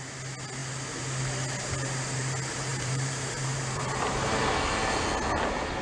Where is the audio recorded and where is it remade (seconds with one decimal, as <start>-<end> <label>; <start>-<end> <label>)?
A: 0.0-2.7 recorded; 2.7-4.3 remade; 4.3-5.8 recorded